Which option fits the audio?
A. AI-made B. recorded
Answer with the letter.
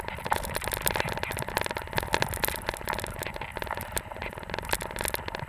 B